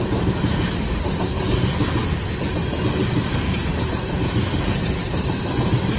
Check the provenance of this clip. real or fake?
real